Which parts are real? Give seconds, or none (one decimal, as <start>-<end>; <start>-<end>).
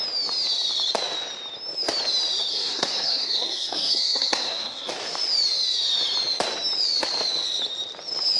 0.0-2.5; 4.9-8.4